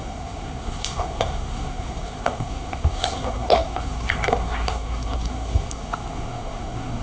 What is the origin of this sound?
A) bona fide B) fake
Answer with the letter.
B